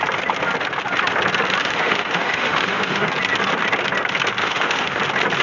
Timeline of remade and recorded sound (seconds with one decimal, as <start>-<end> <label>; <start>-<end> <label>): 0.0-1.6 recorded; 1.6-3.1 remade; 3.1-4.4 recorded; 4.4-5.0 remade; 5.0-5.4 recorded